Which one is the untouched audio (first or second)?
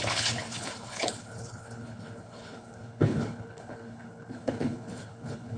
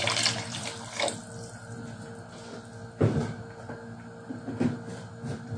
second